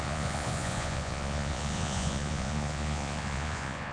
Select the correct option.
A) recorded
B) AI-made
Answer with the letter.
B